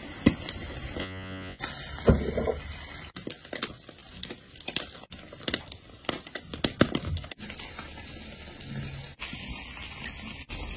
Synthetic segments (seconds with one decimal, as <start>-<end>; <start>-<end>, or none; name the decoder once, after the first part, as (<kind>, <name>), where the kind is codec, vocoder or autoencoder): 1.0-1.6 (vocoder, Vocos)